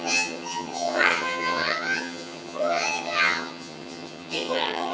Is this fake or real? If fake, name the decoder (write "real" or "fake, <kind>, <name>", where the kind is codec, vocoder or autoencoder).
fake, vocoder, HiFi-GAN